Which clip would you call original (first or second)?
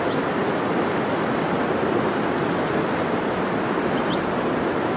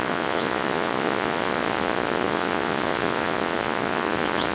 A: first